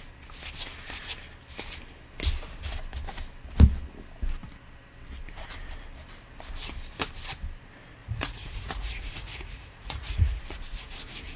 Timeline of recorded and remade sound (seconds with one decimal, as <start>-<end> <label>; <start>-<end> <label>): 0.0-8.0 recorded; 8.0-10.4 remade; 10.4-11.4 recorded